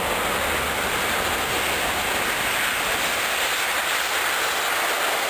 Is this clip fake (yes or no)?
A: no